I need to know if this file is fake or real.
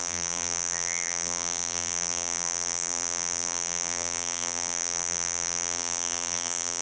fake